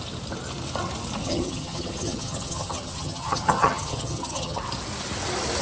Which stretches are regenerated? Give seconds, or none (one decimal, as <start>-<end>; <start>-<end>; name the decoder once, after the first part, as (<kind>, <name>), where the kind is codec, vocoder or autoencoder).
1.2-4.6 (vocoder, HiFi-GAN)